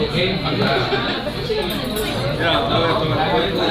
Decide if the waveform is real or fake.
real